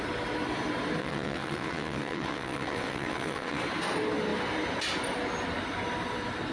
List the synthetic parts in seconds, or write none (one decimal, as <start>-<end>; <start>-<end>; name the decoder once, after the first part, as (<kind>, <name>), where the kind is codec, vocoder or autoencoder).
1.0-3.6 (vocoder, WaveNeXt)